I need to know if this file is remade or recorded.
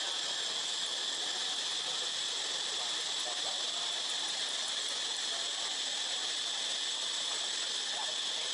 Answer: recorded